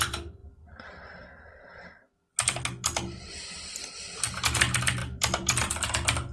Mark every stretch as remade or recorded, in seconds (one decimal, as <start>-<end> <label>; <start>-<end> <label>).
0.0-0.4 recorded; 0.4-4.2 remade; 4.2-5.0 recorded; 5.0-5.7 remade; 5.7-6.3 recorded